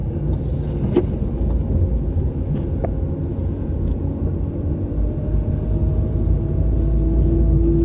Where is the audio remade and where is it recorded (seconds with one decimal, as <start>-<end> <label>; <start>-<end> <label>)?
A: 0.0-3.3 recorded; 3.3-4.3 remade; 4.3-7.8 recorded